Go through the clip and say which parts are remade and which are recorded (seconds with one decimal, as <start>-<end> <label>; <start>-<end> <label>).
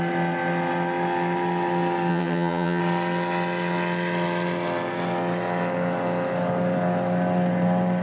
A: 0.0-2.1 recorded; 2.1-2.8 remade; 2.8-8.0 recorded